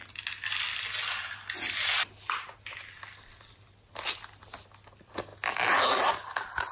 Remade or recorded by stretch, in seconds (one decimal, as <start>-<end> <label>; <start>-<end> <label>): 0.0-6.7 recorded